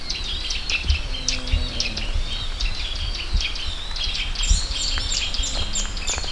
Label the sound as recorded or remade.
recorded